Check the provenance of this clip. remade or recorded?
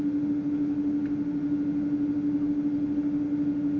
recorded